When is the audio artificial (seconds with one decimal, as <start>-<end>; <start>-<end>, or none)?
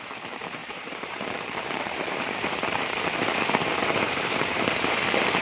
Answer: 0.0-5.4